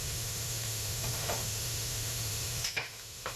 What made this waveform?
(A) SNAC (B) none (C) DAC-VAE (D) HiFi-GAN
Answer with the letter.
C